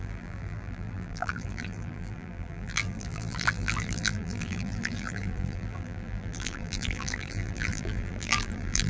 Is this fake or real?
fake